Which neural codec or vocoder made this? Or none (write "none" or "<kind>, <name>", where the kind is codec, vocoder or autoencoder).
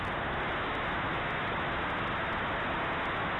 none